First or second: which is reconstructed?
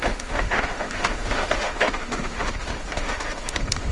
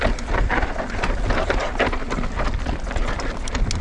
first